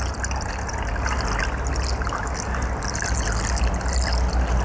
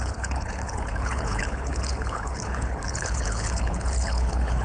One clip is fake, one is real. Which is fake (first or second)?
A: second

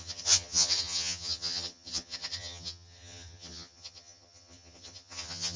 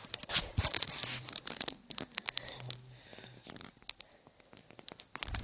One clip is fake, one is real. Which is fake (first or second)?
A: first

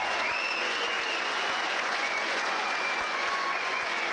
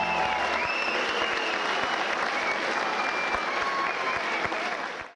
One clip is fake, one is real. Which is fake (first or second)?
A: first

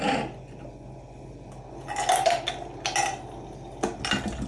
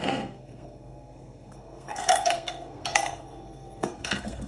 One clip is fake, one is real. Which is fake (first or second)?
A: second